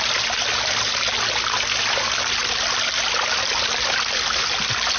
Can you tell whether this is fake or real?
real